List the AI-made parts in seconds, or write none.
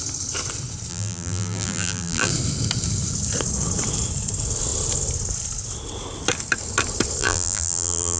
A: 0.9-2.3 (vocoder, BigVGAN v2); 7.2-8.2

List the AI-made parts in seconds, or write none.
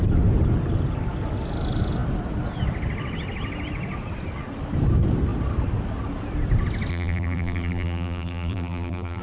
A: 6.9-9.2 (vocoder, BigVGAN v2)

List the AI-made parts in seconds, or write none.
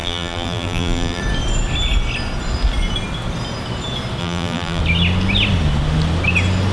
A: 0.0-1.2 (vocoder, BigVGAN v2); 4.2-4.8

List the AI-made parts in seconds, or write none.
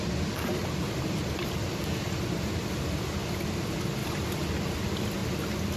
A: 0.6-2.6 (vocoder, BigVGAN v2); 4.0-4.6